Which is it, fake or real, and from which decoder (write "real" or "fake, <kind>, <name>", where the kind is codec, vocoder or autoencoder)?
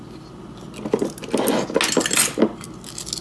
real